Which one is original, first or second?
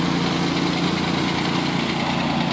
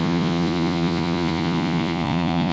first